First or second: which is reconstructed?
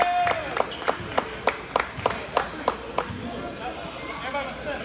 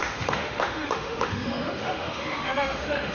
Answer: second